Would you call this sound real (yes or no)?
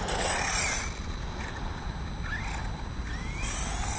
yes